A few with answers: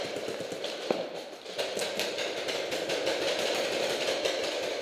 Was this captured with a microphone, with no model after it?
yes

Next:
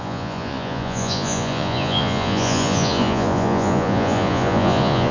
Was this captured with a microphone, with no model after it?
no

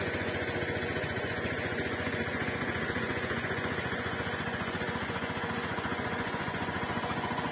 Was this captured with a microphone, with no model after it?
no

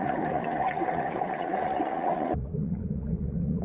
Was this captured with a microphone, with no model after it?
no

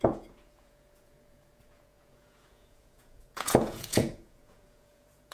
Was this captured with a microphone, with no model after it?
no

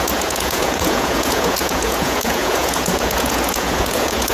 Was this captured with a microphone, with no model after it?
no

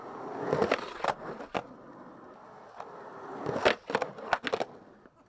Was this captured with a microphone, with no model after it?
yes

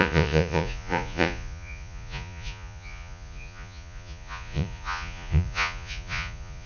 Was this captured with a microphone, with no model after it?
no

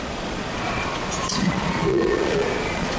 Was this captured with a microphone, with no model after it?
no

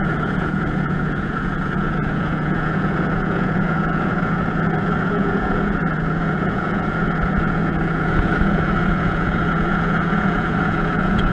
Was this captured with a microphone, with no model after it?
no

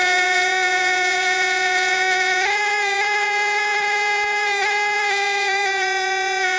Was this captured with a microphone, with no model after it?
no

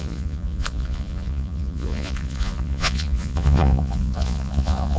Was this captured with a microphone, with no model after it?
no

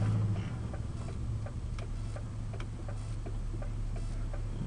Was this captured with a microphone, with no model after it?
yes